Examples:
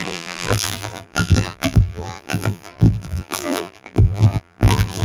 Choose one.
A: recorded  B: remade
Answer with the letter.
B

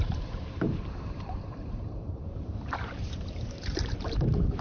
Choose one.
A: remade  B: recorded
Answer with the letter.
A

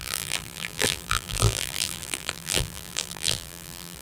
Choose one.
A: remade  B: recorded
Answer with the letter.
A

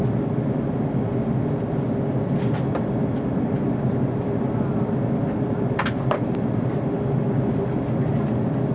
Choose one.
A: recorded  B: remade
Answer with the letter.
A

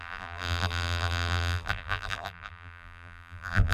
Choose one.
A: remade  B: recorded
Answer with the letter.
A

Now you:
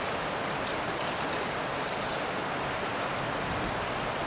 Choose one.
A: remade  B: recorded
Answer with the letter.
B